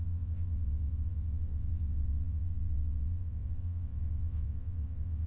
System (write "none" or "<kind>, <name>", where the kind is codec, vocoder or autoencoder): vocoder, WaveNeXt